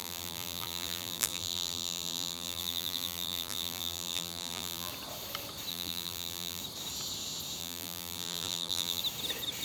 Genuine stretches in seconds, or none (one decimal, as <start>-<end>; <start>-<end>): 4.9-5.7; 6.6-7.6; 9.0-9.6